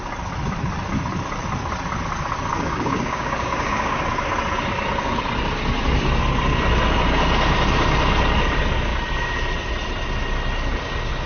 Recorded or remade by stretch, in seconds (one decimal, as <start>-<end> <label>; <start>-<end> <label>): 0.0-2.5 recorded; 2.5-4.0 remade; 4.0-11.3 recorded